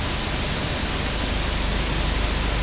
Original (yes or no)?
yes